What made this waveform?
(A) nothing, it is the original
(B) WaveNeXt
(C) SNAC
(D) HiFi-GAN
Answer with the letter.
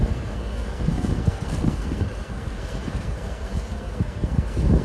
C